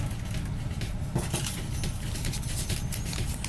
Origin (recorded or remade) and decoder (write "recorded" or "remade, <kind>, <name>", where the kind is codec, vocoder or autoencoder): recorded